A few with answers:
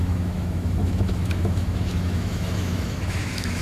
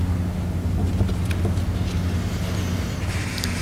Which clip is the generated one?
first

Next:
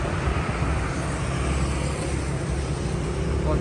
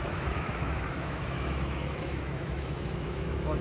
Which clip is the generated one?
second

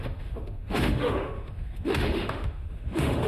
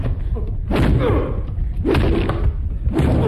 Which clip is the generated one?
first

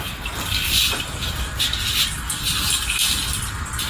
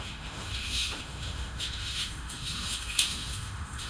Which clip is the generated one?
second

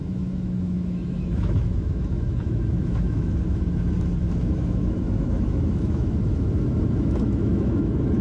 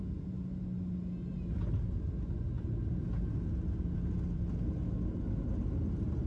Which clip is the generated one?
first